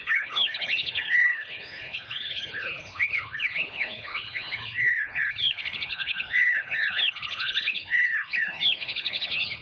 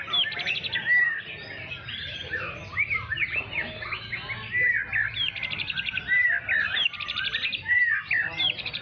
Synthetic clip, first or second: first